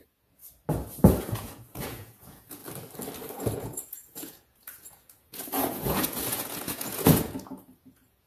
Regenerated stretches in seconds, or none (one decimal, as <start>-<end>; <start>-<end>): 0.0-0.4; 1.2-2.6; 3.3-8.3